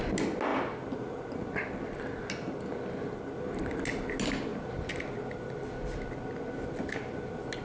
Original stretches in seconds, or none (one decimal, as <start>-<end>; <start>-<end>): 0.0-7.6